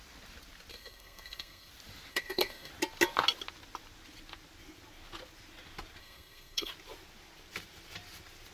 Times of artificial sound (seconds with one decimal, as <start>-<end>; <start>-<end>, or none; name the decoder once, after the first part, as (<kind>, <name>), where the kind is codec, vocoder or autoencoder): 0.7-1.7 (codec, SNAC); 2.1-2.7; 6.0-6.7